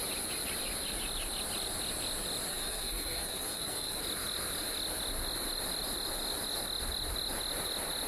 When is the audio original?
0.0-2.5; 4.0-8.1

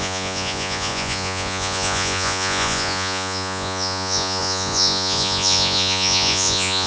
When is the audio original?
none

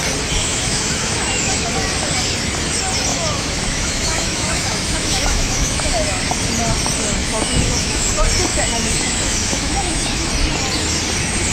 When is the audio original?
0.0-0.4; 1.7-3.1; 6.2-7.2; 8.1-8.5; 10.3-11.5

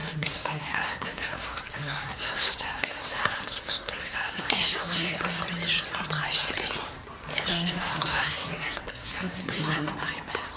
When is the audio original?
5.2-7.5; 9.9-10.6

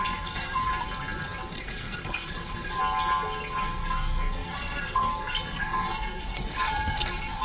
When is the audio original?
0.7-1.5; 2.8-3.6

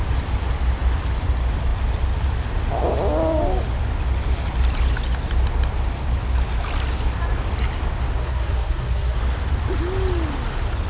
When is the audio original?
0.0-8.2; 9.2-10.9

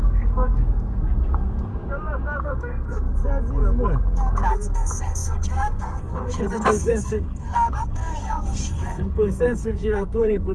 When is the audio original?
1.7-2.4; 3.2-4.5

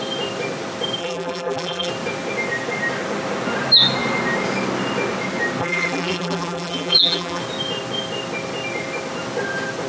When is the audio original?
0.0-1.0; 1.9-5.6; 7.4-9.9